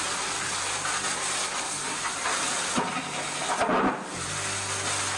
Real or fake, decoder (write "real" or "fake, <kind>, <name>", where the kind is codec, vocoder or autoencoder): real